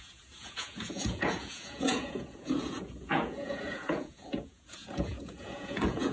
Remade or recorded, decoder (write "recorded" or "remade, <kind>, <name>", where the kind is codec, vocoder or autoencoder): remade, vocoder, Vocos